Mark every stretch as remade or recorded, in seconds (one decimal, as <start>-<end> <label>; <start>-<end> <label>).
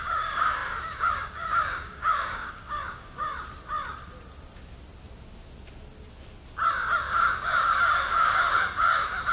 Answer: 0.0-3.3 remade; 3.3-7.0 recorded; 7.0-9.3 remade